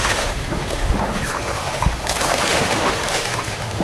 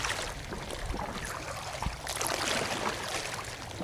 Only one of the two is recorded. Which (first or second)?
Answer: second